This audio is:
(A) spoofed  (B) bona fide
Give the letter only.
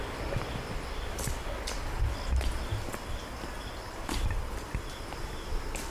B